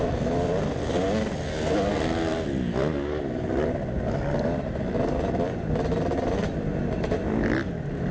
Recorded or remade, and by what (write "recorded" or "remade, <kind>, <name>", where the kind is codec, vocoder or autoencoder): recorded